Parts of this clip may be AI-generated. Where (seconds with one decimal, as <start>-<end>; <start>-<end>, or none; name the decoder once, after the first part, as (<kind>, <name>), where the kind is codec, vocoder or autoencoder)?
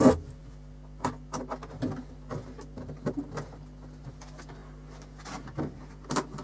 none